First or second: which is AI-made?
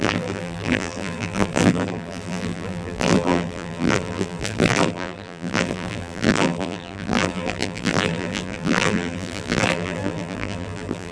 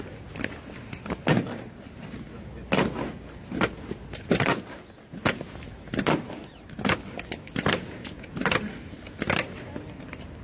first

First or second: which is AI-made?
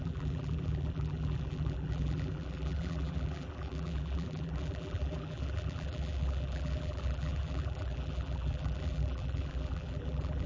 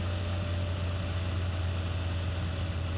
first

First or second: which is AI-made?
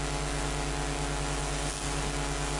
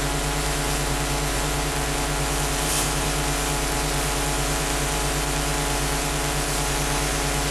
second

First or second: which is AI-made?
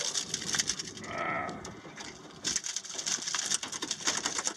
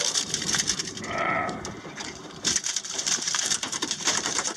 second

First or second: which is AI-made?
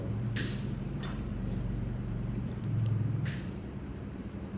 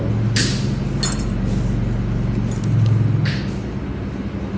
first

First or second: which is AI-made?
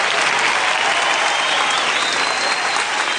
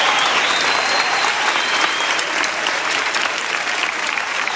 second